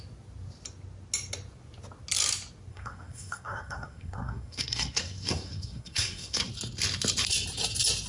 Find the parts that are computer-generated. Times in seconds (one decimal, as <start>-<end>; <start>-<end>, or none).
2.7-6.5

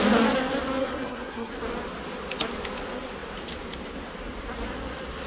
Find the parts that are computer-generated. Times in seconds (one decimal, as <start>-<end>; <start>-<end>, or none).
0.8-1.5